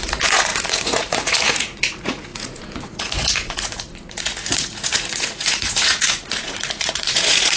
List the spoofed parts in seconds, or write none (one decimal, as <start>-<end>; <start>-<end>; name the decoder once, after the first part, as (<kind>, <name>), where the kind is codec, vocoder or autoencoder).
0.0-7.6 (vocoder, Vocos)